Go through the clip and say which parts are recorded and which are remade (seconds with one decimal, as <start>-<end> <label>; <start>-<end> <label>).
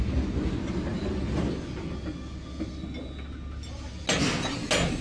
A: 0.0-5.0 recorded